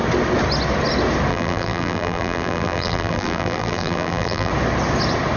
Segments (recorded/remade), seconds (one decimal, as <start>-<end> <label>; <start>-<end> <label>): 0.0-1.3 recorded; 1.3-4.5 remade; 4.5-5.4 recorded